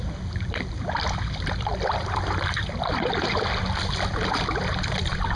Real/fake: real